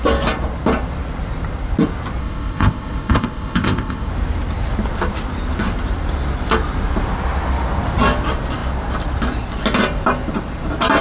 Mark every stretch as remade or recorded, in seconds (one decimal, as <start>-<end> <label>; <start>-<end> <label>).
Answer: 0.0-2.2 recorded; 2.2-4.1 remade; 4.1-11.0 recorded

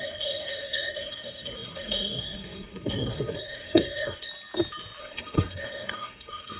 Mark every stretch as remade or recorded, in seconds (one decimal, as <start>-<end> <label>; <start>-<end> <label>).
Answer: 0.0-4.3 remade; 4.3-5.0 recorded; 5.0-6.6 remade

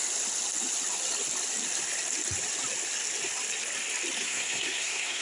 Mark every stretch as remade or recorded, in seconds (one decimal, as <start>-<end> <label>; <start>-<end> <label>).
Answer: 0.0-4.2 recorded; 4.2-5.2 remade